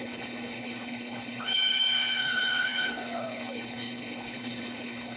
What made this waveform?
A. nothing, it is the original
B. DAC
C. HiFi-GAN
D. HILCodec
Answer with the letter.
D